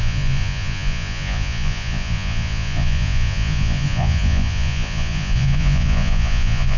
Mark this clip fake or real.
fake